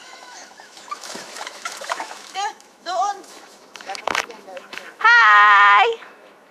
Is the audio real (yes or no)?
no